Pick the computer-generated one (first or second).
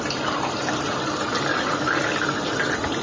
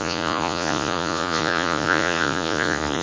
second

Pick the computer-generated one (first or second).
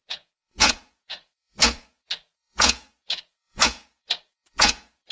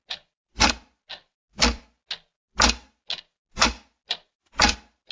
first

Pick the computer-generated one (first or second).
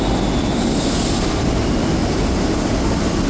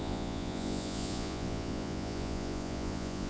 second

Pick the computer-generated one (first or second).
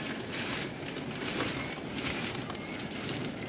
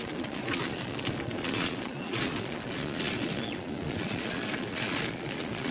second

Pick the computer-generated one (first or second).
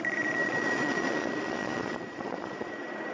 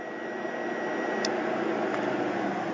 first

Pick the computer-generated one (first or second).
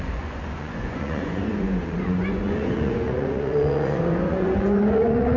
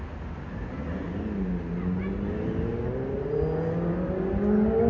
first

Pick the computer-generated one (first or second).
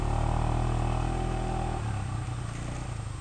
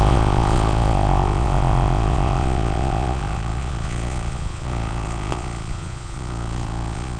second